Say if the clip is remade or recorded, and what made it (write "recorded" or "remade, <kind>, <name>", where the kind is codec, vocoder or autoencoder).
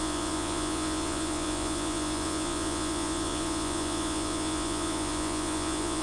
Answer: remade, vocoder, Vocos